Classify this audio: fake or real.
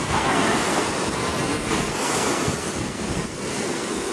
fake